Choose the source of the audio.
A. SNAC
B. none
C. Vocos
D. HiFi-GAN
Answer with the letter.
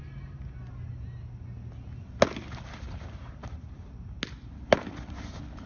B